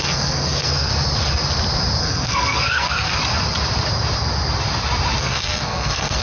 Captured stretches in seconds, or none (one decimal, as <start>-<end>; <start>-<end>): 0.9-2.0; 3.2-5.2

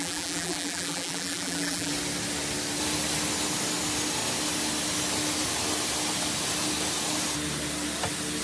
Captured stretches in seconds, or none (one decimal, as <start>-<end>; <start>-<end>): 1.9-8.4

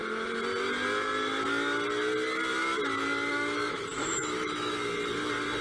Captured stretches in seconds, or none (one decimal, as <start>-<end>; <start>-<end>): 0.0-3.3; 4.7-5.6

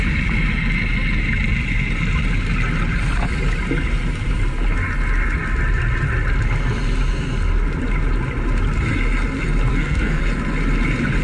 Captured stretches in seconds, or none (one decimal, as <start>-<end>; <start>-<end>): 0.0-9.7; 10.2-11.2